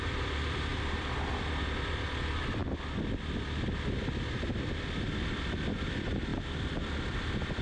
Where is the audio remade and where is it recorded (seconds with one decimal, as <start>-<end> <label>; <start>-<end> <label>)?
0.0-2.6 remade; 2.6-5.7 recorded; 5.7-6.3 remade; 6.3-7.1 recorded; 7.1-7.6 remade

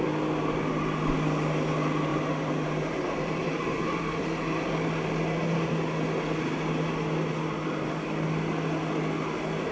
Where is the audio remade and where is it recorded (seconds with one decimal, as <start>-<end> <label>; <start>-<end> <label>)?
0.0-2.1 recorded; 2.1-4.0 remade; 4.0-9.7 recorded

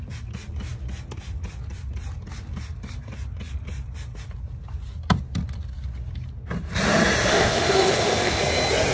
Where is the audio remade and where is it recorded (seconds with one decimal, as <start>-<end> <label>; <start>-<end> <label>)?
0.0-7.3 recorded; 7.3-8.4 remade; 8.4-8.9 recorded

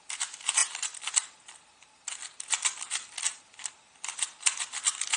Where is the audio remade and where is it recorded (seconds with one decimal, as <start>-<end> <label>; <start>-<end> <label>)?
0.0-5.2 recorded